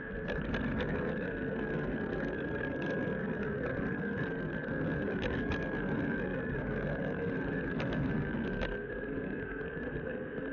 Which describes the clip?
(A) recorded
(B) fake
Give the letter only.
B